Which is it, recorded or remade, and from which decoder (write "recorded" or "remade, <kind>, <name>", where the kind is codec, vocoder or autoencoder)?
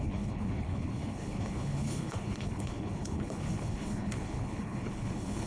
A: remade, codec, HILCodec